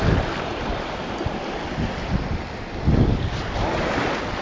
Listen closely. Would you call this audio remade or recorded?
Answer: recorded